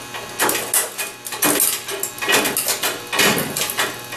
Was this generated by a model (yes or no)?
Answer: no